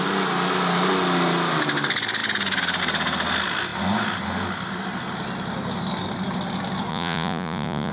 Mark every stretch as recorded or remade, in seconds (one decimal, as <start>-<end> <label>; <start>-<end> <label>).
0.0-6.9 recorded; 6.9-7.9 remade